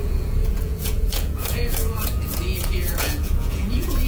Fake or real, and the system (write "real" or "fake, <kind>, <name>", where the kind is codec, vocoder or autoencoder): fake, vocoder, Vocos